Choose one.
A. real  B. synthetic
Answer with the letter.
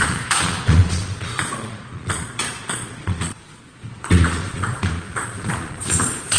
B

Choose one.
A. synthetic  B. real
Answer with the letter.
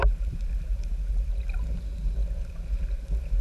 B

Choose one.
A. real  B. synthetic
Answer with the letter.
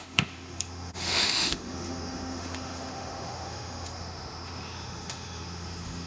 B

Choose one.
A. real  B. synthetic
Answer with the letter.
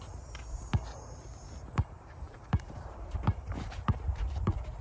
B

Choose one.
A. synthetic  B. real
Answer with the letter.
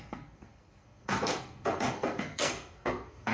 A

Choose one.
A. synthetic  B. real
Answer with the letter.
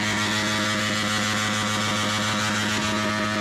B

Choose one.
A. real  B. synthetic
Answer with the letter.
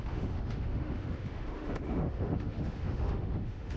B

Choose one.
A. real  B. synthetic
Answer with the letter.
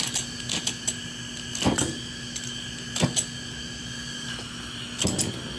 A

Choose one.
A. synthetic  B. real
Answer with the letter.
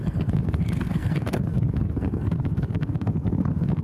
A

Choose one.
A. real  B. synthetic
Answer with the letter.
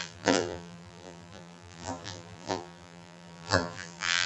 B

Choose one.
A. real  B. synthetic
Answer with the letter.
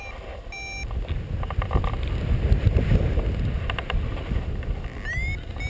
A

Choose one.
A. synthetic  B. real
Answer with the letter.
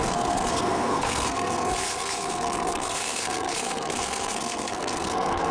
A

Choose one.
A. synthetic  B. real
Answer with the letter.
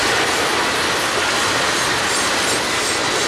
B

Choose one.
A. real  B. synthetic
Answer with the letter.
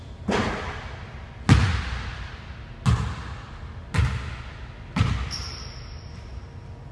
A